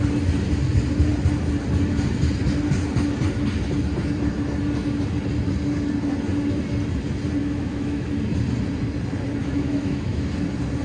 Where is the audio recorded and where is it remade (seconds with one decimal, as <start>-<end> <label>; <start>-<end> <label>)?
0.0-7.4 recorded; 7.4-8.1 remade; 8.1-9.4 recorded; 9.4-10.3 remade; 10.3-10.8 recorded